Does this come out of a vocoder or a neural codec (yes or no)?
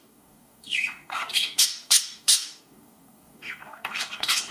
yes